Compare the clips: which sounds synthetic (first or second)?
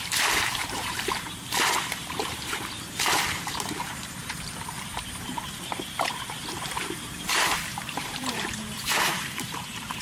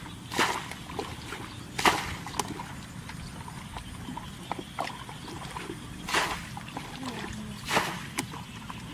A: first